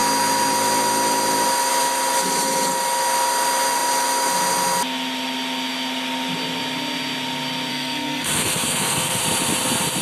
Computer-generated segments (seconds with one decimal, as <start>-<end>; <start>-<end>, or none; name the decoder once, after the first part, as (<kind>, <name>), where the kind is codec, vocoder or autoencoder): 7.7-9.2 (codec, SNAC)